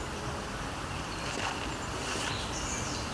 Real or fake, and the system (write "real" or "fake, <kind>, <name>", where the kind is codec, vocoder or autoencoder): real